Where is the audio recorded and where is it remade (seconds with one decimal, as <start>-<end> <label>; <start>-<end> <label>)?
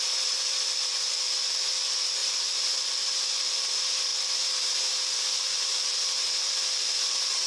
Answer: 0.0-2.2 recorded; 2.2-3.5 remade; 3.5-7.5 recorded